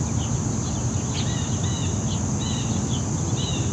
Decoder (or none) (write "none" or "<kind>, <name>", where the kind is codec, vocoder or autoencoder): none